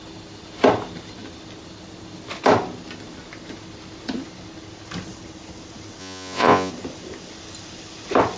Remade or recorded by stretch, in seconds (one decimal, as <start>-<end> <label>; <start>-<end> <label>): 0.0-6.0 recorded; 6.0-6.7 remade; 6.7-8.4 recorded